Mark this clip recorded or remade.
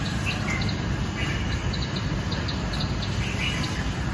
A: recorded